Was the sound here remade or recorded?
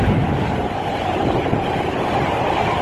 remade